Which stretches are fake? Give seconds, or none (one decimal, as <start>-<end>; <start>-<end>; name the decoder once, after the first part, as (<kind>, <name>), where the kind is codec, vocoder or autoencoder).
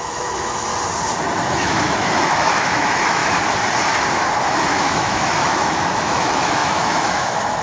0.0-0.7 (autoencoder, DAC-VAE); 1.5-3.2; 4.7-7.6